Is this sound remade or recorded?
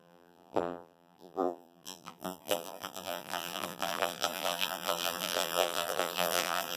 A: remade